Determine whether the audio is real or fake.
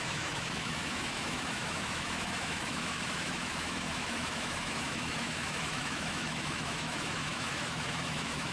fake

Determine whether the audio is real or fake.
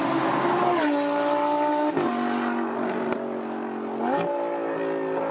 real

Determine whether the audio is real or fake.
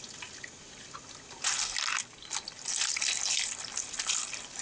real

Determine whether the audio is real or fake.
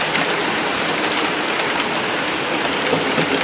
real